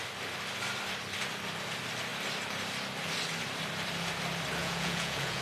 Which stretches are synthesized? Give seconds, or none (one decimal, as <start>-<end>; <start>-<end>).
4.6-5.4